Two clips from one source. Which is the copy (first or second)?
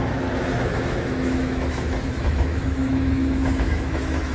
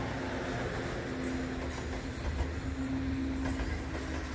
first